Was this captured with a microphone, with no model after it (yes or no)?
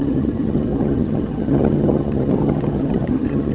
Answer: no